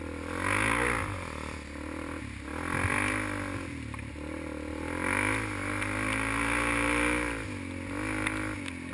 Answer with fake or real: real